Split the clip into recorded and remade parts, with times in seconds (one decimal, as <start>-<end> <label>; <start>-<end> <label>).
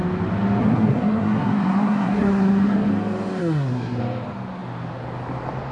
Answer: 0.0-0.6 recorded; 0.6-2.9 remade; 2.9-3.4 recorded; 3.4-4.0 remade; 4.0-5.7 recorded